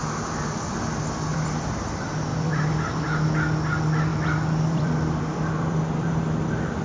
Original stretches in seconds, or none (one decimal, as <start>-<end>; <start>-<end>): 0.0-1.3; 1.9-2.3; 2.9-4.1; 6.2-6.8